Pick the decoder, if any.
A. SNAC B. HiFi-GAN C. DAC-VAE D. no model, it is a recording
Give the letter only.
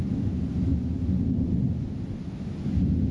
D